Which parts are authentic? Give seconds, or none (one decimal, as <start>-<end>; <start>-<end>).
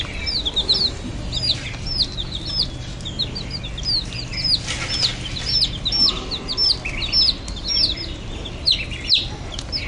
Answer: 0.0-9.9